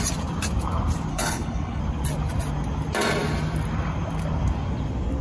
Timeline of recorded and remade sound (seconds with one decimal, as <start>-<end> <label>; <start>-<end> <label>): 0.0-1.1 recorded; 1.1-1.8 remade; 1.8-5.2 recorded